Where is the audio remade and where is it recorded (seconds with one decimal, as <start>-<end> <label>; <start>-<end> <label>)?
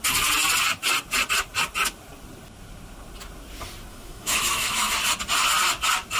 0.0-3.9 recorded; 3.9-4.9 remade; 4.9-6.2 recorded